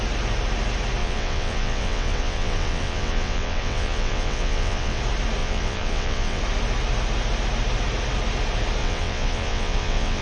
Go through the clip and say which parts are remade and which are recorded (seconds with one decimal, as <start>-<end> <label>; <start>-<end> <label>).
0.0-1.0 recorded; 1.0-5.0 remade; 5.0-5.4 recorded; 5.4-6.4 remade; 6.4-8.8 recorded; 8.8-10.2 remade

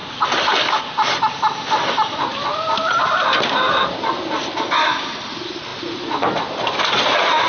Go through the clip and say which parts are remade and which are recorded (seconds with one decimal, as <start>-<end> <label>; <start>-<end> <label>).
0.0-7.5 recorded

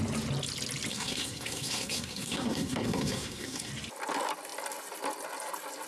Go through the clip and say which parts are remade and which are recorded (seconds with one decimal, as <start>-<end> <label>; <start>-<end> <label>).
0.0-0.9 recorded; 0.9-3.7 remade; 3.7-5.9 recorded

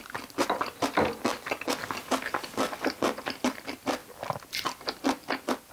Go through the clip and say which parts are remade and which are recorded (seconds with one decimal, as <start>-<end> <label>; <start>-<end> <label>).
0.0-4.0 recorded; 4.0-4.9 remade; 4.9-5.7 recorded

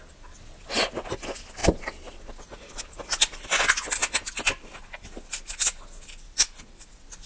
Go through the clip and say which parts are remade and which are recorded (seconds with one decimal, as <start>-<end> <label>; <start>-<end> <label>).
0.0-7.3 recorded

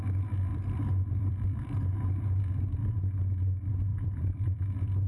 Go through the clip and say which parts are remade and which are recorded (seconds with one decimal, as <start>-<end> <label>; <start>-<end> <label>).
0.0-0.5 recorded; 0.5-2.4 remade; 2.4-3.9 recorded; 3.9-4.6 remade; 4.6-5.1 recorded

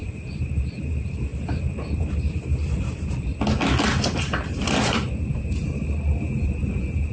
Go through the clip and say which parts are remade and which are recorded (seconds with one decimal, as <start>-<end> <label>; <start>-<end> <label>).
0.0-3.3 remade; 3.3-4.0 recorded; 4.0-6.1 remade; 6.1-7.1 recorded

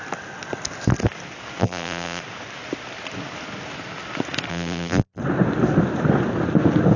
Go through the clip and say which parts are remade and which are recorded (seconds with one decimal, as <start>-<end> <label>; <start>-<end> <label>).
0.0-1.6 recorded; 1.6-2.2 remade; 2.2-4.5 recorded; 4.5-5.2 remade; 5.2-7.0 recorded